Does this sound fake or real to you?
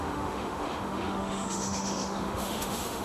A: fake